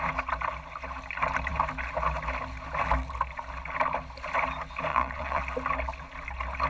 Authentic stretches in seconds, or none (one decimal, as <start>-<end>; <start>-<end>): 0.0-4.9; 5.4-6.7